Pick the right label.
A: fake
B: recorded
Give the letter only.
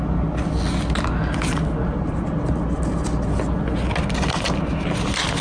B